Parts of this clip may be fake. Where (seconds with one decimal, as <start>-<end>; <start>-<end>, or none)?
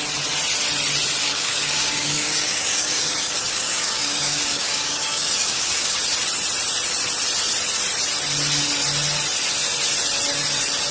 1.2-6.0